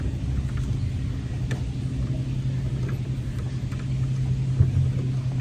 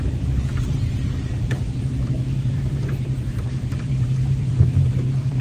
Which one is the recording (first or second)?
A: first